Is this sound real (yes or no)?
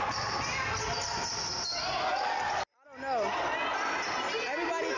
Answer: yes